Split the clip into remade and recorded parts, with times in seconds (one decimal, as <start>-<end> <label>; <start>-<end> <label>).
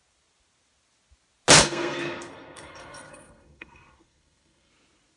0.0-1.6 recorded; 1.6-4.7 remade; 4.7-5.2 recorded